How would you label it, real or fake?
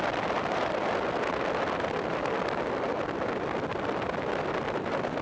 real